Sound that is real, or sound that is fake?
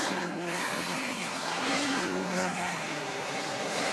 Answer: fake